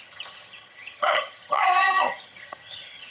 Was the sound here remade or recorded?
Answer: remade